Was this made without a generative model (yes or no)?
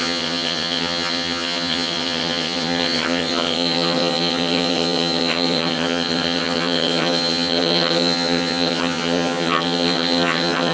no